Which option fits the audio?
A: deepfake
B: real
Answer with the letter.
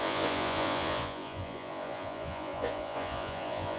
A